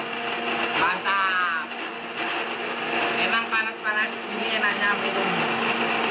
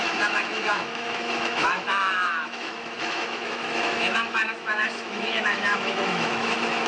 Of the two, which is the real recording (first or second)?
first